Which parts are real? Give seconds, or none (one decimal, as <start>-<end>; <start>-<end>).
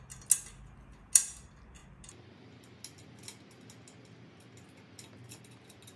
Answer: 0.0-6.0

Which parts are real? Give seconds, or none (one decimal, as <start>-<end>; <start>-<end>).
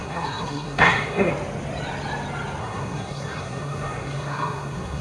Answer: 1.3-2.6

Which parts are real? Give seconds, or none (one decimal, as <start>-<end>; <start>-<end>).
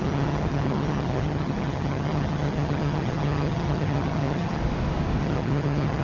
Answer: 4.6-5.2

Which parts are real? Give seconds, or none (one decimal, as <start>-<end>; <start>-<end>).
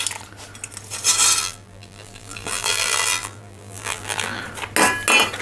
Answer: 0.0-1.4; 4.4-5.4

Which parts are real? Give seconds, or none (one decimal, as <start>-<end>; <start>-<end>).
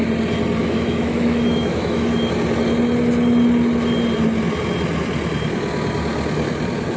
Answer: 0.0-0.6; 2.2-7.0